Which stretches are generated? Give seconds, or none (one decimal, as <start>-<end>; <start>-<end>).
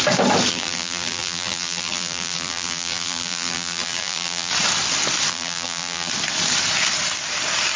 0.5-4.5; 5.3-6.1